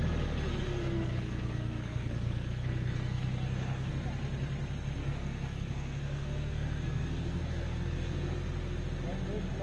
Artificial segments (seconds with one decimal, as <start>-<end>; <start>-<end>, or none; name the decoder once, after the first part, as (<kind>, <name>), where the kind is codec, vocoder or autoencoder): 0.5-3.9 (codec, SNAC); 5.0-8.4